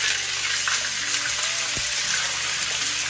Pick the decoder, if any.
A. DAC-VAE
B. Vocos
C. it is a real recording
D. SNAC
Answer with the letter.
C